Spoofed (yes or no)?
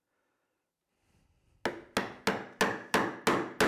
no